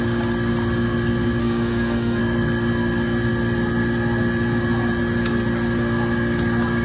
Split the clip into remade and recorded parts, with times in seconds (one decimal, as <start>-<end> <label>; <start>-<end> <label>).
0.0-1.4 recorded; 1.4-2.2 remade; 2.2-6.8 recorded